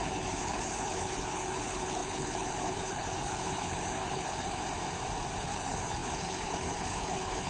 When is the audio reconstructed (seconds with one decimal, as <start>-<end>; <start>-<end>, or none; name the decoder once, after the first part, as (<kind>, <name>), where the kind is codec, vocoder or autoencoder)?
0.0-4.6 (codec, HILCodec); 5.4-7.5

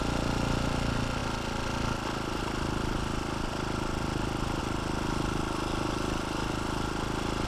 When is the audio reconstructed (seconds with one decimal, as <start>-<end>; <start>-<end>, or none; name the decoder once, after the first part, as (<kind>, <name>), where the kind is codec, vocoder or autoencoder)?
none

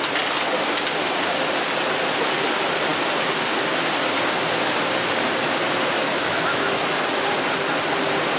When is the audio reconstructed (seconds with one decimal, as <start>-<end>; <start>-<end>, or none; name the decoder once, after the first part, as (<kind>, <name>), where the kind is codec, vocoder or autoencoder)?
6.1-6.8 (autoencoder, DAC-VAE)